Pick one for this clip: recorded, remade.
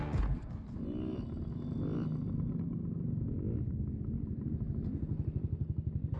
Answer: recorded